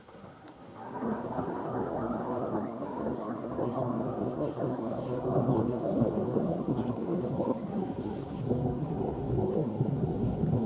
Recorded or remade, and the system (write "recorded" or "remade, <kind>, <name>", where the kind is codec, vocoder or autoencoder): remade, codec, SNAC